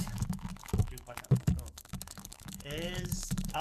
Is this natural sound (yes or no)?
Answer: no